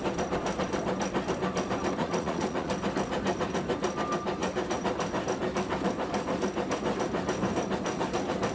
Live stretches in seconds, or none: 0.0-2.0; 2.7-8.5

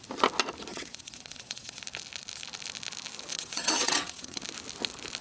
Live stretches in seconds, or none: 0.0-0.7; 1.8-3.3; 4.4-5.2

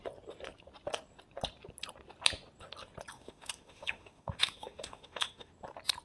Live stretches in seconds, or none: 0.0-3.1; 5.5-6.0

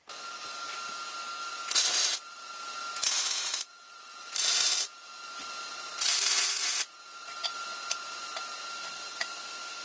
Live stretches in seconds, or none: 0.0-3.7; 4.3-9.8

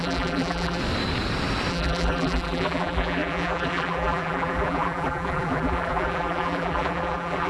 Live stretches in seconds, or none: 0.8-1.7

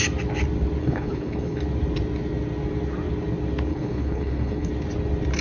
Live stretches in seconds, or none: 0.0-0.8; 1.6-3.7; 4.7-5.4

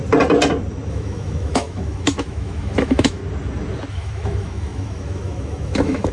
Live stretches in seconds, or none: 0.0-0.9; 3.2-3.9

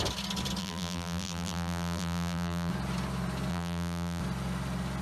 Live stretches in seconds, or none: 0.0-0.6; 2.7-3.5; 4.2-5.0